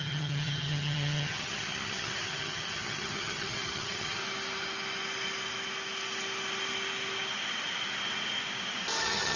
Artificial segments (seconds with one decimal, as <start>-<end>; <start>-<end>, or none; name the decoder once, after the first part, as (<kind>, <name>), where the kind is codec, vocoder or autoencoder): 0.0-4.2 (vocoder, HiFi-GAN); 9.0-9.4